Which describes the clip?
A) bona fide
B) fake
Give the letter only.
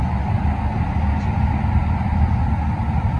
A